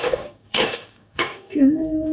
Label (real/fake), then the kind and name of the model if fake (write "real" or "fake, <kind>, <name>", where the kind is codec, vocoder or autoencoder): fake, codec, DAC